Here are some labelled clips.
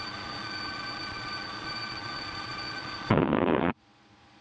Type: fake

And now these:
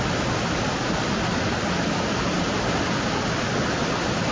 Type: real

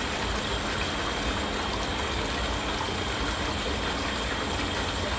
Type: real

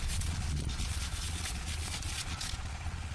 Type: fake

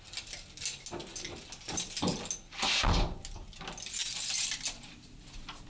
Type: real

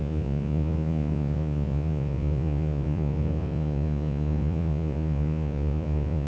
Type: fake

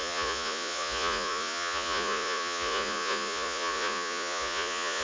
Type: fake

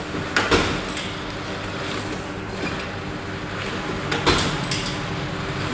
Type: real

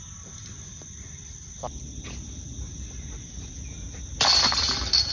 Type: real